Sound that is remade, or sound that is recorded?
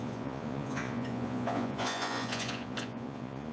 remade